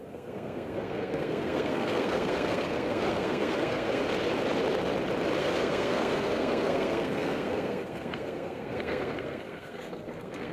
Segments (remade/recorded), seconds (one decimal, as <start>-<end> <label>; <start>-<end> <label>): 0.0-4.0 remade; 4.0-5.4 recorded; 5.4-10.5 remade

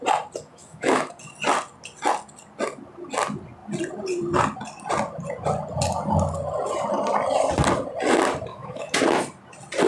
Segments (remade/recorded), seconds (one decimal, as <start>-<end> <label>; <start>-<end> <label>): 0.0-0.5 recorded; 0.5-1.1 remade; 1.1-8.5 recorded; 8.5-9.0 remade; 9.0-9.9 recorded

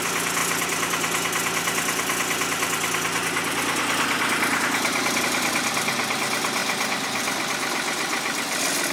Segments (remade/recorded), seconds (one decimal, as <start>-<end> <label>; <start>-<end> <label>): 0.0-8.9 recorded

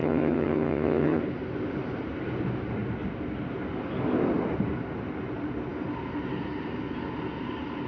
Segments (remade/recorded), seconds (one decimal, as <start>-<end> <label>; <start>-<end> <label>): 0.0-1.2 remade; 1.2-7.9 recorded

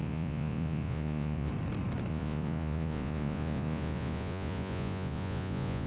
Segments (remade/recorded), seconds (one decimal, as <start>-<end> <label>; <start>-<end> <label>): 0.0-1.5 remade; 1.5-2.1 recorded; 2.1-5.9 remade